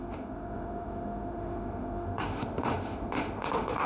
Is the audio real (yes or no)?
no